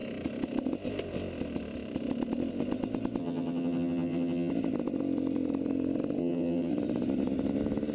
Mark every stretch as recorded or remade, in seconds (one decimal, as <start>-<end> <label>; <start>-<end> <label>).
0.0-3.2 recorded; 3.2-4.5 remade; 4.5-6.2 recorded; 6.2-6.7 remade; 6.7-7.9 recorded